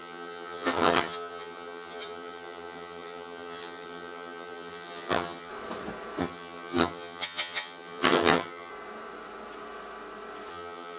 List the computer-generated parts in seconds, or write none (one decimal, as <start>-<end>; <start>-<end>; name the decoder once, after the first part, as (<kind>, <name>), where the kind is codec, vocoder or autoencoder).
0.0-5.5 (vocoder, HiFi-GAN); 6.2-8.7; 10.5-11.0

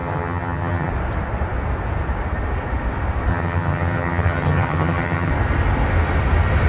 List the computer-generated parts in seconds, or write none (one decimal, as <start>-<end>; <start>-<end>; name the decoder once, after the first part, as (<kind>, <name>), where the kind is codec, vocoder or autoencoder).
0.0-0.9 (vocoder, HiFi-GAN); 3.3-5.3

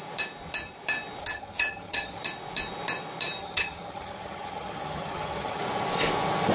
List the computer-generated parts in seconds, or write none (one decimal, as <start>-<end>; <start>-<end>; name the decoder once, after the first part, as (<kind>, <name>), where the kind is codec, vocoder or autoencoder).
1.2-2.2 (vocoder, HiFi-GAN); 3.4-5.6